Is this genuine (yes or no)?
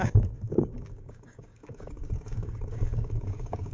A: no